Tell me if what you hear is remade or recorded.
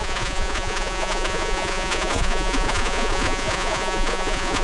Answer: remade